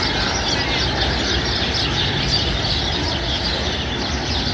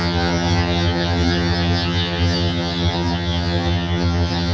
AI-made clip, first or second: second